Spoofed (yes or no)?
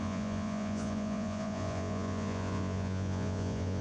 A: yes